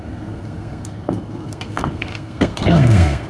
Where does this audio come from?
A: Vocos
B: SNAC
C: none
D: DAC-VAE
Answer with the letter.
B